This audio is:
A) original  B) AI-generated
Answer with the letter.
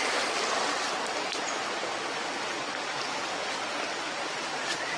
A